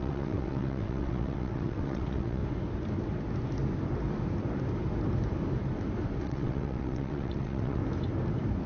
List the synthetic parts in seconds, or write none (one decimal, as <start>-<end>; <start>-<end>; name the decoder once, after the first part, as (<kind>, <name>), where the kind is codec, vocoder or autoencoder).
0.0-2.4 (vocoder, WaveNeXt); 6.2-7.8